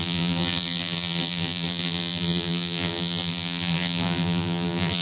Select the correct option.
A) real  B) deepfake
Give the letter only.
B